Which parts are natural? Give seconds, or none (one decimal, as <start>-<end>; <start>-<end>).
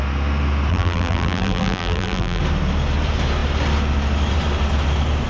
0.0-0.7; 2.4-5.3